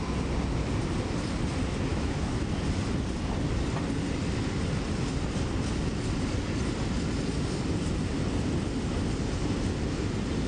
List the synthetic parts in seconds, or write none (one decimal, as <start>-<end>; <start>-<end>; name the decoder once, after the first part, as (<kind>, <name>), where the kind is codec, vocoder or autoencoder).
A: 1.9-2.4 (autoencoder, DAC-VAE)